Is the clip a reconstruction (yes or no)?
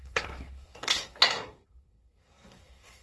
yes